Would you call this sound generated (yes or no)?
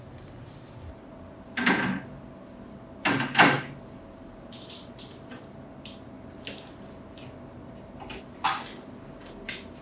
no